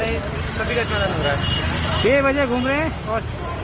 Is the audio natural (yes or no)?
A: yes